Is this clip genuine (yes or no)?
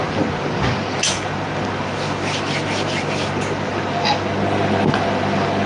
yes